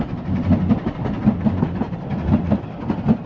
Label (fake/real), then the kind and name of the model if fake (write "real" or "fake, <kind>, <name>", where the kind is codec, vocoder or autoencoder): real